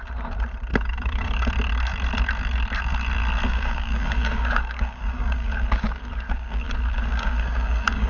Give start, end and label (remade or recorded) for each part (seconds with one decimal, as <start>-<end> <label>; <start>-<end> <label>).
0.0-0.7 recorded; 0.7-1.5 remade; 1.5-3.5 recorded; 3.5-8.1 remade